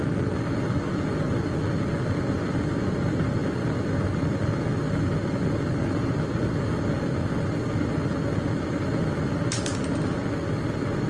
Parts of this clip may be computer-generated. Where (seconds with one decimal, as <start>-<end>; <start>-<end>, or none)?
none